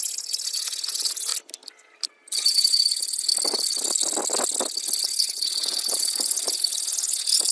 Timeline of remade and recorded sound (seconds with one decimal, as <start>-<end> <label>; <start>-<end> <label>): 0.0-1.3 remade; 1.3-2.4 recorded; 2.4-3.3 remade; 3.3-5.1 recorded; 5.1-7.5 remade